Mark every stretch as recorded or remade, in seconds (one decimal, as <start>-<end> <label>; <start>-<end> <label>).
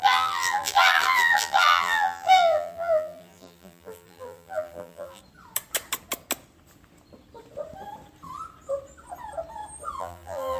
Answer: 0.0-5.2 remade; 5.2-10.0 recorded; 10.0-10.6 remade